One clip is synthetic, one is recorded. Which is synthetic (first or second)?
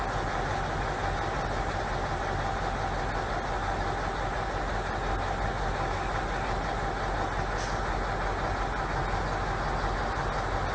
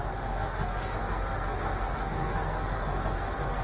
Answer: second